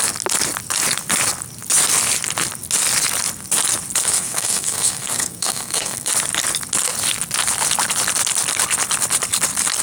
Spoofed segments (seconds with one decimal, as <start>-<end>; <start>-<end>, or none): 4.0-6.1